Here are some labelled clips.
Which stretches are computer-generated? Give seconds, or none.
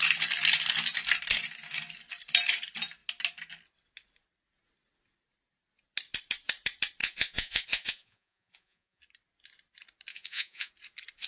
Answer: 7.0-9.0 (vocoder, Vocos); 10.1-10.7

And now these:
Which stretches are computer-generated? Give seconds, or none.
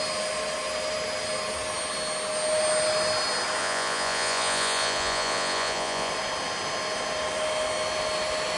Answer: 3.6-6.1 (vocoder, Vocos)